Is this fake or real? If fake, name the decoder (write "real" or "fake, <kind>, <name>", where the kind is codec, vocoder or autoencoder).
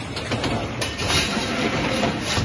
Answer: fake, vocoder, BigVGAN v2